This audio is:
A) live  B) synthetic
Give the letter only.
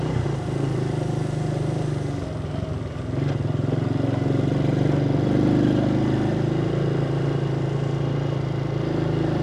A